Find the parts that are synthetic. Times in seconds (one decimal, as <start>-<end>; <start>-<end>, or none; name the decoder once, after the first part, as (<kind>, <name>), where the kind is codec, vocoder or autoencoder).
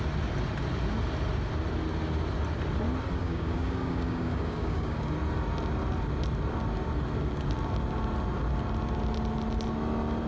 3.2-5.1 (codec, DAC)